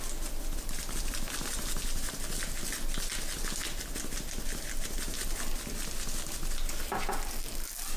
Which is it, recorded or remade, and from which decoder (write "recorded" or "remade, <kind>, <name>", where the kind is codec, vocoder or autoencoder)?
recorded